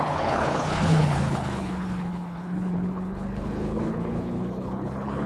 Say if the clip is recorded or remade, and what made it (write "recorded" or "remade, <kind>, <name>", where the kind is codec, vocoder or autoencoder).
remade, codec, HILCodec